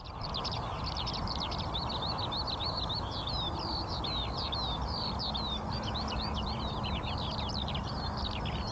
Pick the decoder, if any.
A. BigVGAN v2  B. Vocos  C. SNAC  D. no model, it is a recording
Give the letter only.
A